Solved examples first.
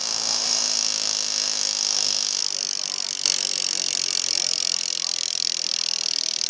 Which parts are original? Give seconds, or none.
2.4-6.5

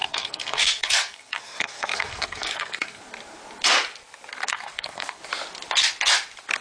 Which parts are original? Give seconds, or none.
3.0-4.5; 5.2-6.6

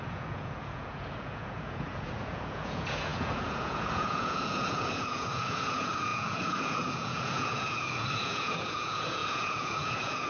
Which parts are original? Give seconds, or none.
none

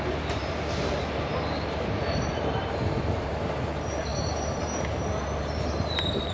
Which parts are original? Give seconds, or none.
none

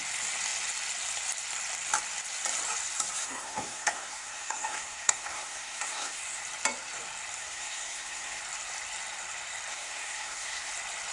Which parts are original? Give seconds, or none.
0.0-3.2; 6.2-7.4; 8.4-9.7; 10.7-11.1

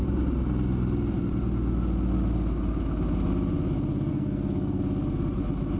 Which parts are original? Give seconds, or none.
0.0-4.1; 4.8-5.8

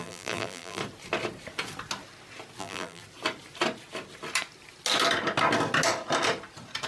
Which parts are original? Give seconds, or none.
0.8-2.6; 3.0-6.9